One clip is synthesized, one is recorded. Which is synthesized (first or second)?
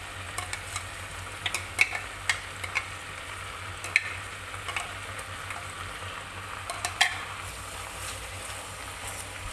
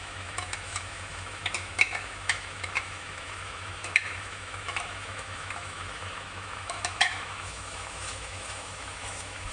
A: second